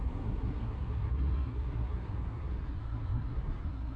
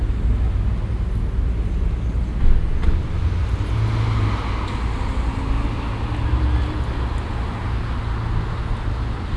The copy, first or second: first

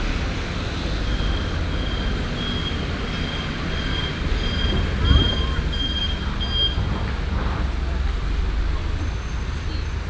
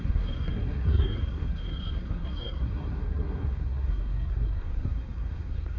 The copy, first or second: second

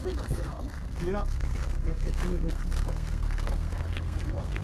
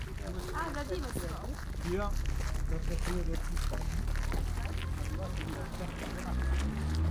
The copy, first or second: first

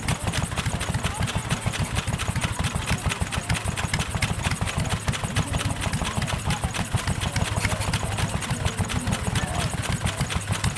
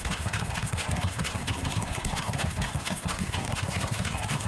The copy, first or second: second